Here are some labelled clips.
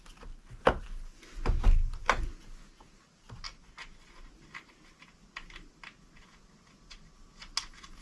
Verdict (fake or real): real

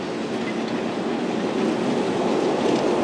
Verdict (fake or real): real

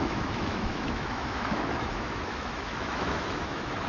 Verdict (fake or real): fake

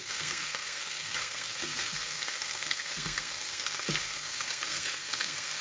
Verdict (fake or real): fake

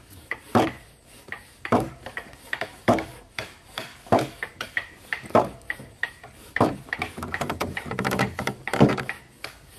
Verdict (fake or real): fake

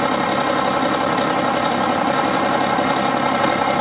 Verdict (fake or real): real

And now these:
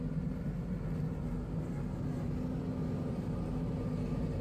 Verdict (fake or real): real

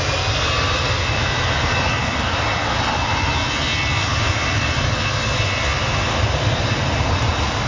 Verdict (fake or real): real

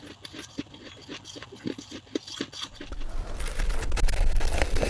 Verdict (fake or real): real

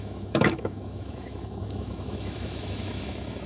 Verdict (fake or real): fake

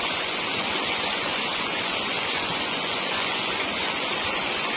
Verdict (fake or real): fake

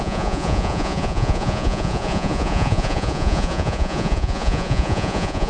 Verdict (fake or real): fake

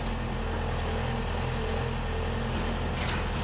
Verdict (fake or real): real